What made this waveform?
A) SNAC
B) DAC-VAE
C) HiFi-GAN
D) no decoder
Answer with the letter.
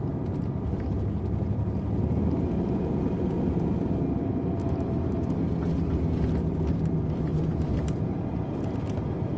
D